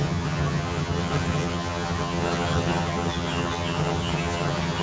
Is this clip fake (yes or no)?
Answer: yes